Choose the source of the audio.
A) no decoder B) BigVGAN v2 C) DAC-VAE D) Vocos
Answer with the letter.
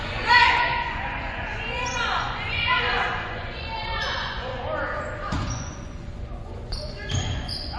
D